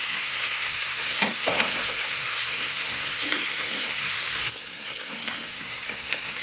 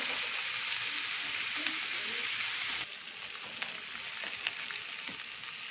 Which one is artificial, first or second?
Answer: first